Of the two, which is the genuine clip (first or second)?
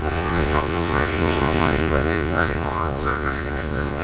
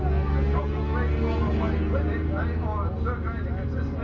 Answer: second